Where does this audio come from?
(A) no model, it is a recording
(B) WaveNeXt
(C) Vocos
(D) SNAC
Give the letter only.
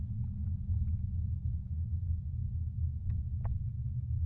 A